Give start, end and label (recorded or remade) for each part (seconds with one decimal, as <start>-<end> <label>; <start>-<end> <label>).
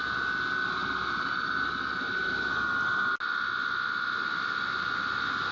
0.0-5.5 recorded